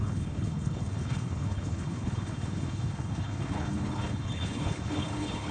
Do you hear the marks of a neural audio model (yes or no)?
yes